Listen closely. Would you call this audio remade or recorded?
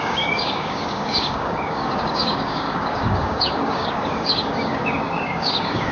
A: remade